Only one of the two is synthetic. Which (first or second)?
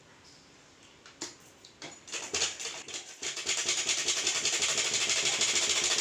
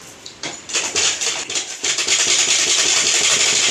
second